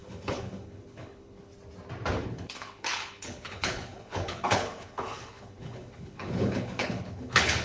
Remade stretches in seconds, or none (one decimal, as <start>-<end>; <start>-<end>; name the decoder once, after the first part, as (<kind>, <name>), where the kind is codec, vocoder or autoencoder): 0.0-1.5 (codec, HILCodec); 2.2-7.6

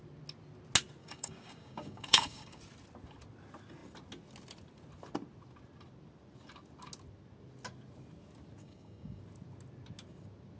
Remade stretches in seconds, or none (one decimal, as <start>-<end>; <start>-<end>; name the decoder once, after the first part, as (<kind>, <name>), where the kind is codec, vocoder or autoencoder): 1.0-2.6 (codec, DAC); 8.6-9.2

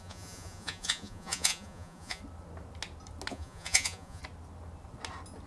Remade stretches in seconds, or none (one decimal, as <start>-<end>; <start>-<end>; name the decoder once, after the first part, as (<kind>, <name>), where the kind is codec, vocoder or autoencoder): 0.0-2.2 (vocoder, Vocos); 3.3-4.2

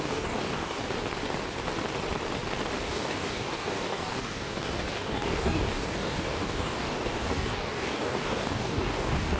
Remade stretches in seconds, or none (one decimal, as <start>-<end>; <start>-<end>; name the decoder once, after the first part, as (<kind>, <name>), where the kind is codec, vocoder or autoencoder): 0.0-0.8 (codec, DAC); 2.9-9.4

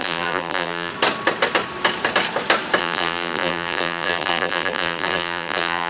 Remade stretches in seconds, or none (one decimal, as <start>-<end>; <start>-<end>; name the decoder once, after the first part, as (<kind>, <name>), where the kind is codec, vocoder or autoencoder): 0.0-0.9 (vocoder, BigVGAN v2); 2.8-5.9

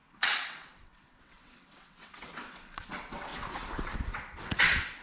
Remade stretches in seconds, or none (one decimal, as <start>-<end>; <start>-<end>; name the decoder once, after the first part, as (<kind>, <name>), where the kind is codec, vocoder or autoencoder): 0.0-3.3 (vocoder, WaveNeXt); 4.1-5.0

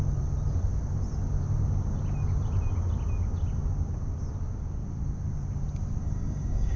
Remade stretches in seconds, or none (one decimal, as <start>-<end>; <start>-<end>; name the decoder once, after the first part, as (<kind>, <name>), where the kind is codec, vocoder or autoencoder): 6.0-6.8 (codec, DAC)

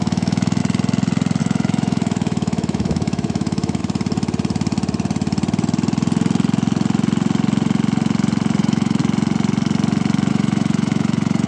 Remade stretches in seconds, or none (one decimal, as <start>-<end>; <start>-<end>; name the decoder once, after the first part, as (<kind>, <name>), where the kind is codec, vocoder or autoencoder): 0.0-0.6 (autoencoder, DAC-VAE); 1.4-3.8; 8.6-9.0; 10.3-11.5